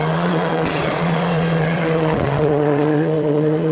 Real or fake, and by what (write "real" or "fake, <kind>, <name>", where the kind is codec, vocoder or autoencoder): fake, vocoder, Vocos